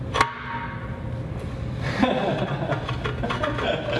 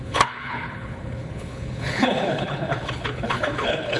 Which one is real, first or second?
first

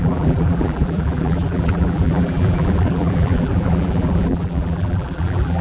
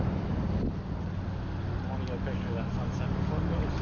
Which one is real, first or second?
second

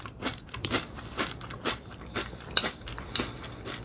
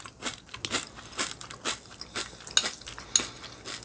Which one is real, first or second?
second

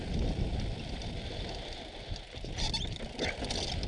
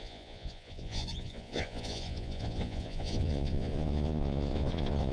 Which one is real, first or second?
first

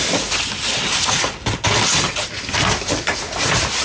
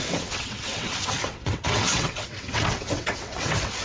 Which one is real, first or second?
first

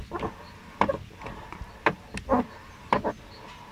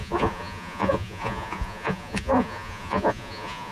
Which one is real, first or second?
first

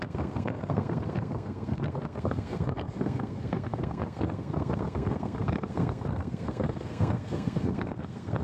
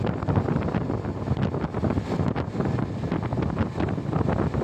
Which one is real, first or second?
second